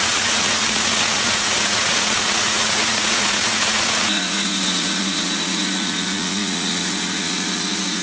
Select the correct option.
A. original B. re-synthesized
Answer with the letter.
B